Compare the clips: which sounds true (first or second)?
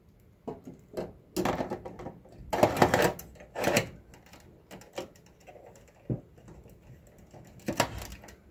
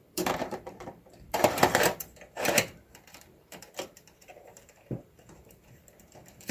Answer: first